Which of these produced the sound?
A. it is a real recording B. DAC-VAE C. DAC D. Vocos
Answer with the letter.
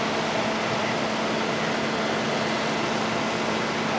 A